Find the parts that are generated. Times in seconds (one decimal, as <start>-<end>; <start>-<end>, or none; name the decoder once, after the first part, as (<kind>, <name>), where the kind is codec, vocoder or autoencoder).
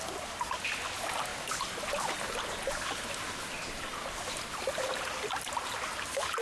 none